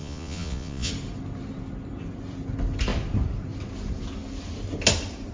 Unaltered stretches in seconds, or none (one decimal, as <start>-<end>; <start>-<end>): 0.9-5.3